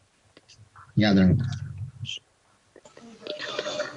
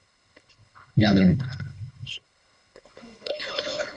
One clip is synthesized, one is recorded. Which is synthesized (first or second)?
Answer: second